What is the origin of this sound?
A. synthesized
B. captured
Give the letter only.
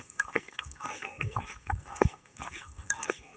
A